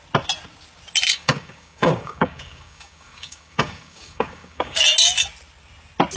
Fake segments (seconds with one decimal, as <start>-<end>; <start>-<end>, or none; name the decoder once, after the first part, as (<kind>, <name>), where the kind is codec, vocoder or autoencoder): 1.1-4.8 (codec, DAC)